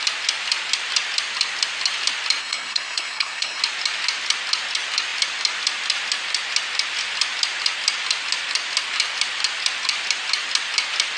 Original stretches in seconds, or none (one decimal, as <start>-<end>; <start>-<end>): 0.0-2.4; 3.6-11.2